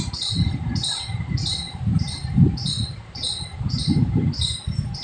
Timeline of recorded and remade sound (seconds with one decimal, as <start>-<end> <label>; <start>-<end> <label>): 0.0-1.6 recorded; 1.6-4.6 remade; 4.6-5.0 recorded